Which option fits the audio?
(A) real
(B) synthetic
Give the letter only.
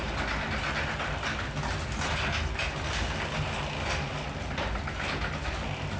A